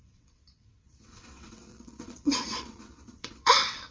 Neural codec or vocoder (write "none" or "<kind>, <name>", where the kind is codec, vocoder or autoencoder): vocoder, WaveNeXt